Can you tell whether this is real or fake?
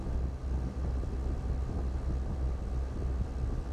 real